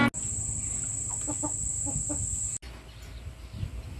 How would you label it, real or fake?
real